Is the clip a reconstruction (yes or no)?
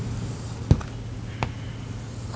no